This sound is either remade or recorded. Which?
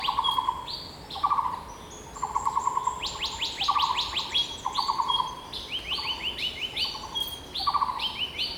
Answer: recorded